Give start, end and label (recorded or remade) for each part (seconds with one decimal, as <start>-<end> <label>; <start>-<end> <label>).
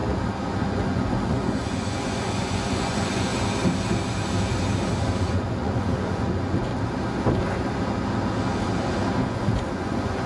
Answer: 0.0-0.6 recorded; 0.6-3.3 remade; 3.3-5.2 recorded; 5.2-6.7 remade; 6.7-9.2 recorded; 9.2-10.3 remade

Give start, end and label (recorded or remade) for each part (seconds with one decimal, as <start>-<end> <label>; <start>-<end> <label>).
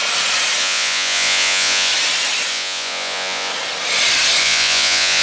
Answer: 0.0-0.6 recorded; 0.6-1.9 remade; 1.9-2.5 recorded; 2.5-3.5 remade; 3.5-4.4 recorded; 4.4-5.2 remade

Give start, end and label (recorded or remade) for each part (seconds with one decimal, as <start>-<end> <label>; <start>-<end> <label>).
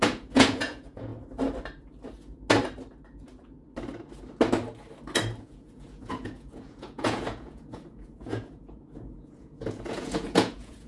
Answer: 0.0-1.1 remade; 1.1-5.4 recorded; 5.4-10.9 remade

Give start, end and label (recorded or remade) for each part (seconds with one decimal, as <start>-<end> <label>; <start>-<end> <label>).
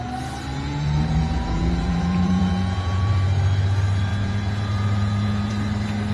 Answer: 0.0-0.5 recorded; 0.5-3.1 remade; 3.1-4.1 recorded; 4.1-5.5 remade; 5.5-6.1 recorded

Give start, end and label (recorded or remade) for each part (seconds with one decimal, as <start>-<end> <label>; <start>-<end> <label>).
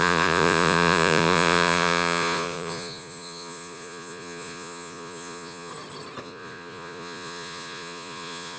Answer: 0.0-5.7 remade; 5.7-6.2 recorded; 6.2-8.6 remade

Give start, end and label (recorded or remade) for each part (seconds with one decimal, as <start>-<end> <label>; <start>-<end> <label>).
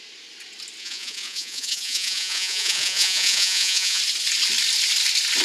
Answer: 0.0-0.8 recorded; 0.8-4.0 remade; 4.0-5.4 recorded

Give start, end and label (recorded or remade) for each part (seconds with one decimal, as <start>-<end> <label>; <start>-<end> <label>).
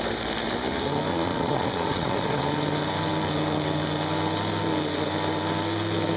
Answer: 0.0-1.1 recorded; 1.1-2.4 remade; 2.4-6.2 recorded